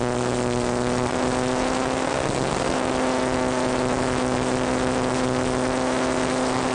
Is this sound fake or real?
real